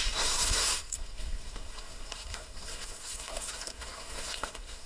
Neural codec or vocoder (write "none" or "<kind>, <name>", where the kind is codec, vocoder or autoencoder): codec, SNAC